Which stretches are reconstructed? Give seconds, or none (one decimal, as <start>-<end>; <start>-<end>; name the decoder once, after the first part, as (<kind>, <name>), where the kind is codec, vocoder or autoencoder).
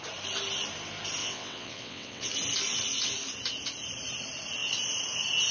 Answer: 1.2-2.3 (vocoder, WaveNeXt)